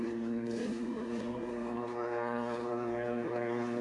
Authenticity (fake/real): fake